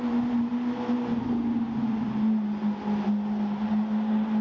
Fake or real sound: real